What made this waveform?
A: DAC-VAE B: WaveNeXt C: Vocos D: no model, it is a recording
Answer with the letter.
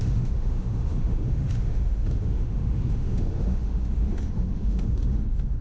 A